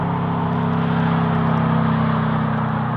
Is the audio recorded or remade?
recorded